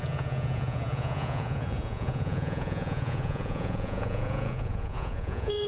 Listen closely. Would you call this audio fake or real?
fake